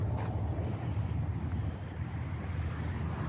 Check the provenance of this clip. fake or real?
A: real